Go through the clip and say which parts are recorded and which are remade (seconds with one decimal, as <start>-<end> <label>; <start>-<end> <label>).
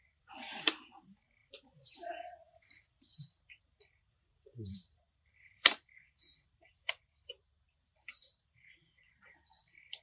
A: 0.0-10.0 remade